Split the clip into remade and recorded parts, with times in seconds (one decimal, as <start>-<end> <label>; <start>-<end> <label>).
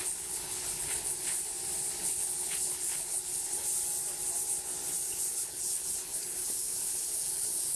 0.0-1.5 remade; 1.5-2.0 recorded; 2.0-3.6 remade; 3.6-5.3 recorded; 5.3-7.8 remade